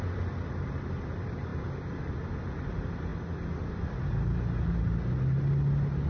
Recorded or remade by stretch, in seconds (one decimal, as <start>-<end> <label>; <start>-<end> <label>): 0.0-6.1 recorded